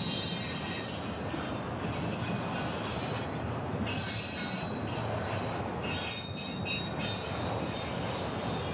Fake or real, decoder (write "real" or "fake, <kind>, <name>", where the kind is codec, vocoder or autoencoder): real